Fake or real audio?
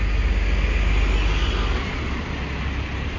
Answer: real